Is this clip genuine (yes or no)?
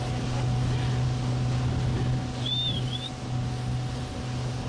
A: yes